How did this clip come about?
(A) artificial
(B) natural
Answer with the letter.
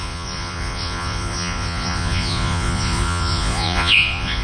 A